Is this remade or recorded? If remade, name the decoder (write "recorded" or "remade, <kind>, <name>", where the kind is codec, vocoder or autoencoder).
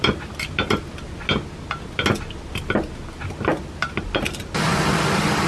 recorded